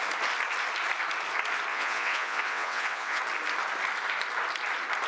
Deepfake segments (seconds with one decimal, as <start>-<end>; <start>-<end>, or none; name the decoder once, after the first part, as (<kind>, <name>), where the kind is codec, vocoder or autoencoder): 1.7-3.2 (vocoder, WaveNeXt)